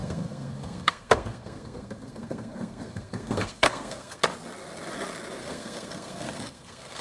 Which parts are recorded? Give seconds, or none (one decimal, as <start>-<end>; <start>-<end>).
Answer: 4.2-5.4

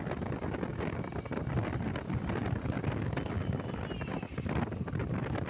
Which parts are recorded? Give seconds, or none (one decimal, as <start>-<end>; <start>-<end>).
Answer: 0.0-5.5

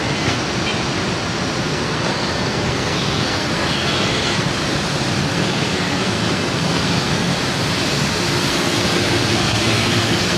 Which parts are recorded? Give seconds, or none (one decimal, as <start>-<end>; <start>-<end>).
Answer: 0.4-1.6; 4.5-5.2; 7.3-8.4

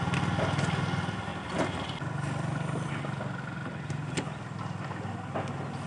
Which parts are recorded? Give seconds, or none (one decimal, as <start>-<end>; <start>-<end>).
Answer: 0.0-5.9

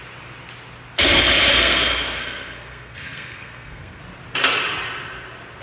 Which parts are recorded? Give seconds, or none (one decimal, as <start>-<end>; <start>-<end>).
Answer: 0.0-1.5; 4.0-5.6

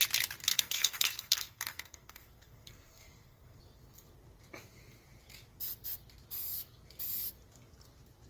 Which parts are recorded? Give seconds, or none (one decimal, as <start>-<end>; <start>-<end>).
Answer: 0.0-0.5; 3.6-8.3